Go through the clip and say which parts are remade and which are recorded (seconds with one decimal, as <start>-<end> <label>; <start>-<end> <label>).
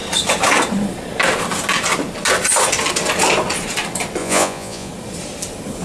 0.0-4.2 recorded; 4.2-4.9 remade; 4.9-5.8 recorded